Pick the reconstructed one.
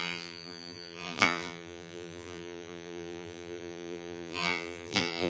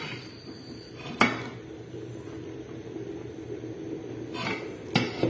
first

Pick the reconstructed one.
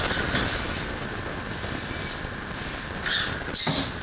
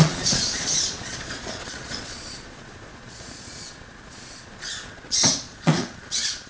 second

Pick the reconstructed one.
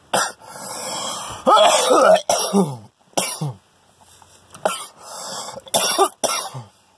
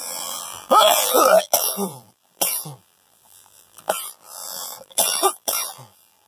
second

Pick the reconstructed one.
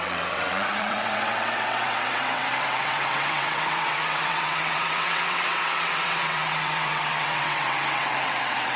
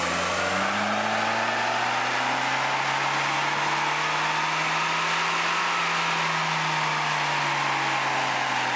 first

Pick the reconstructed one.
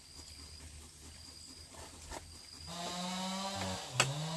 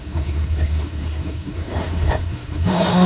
second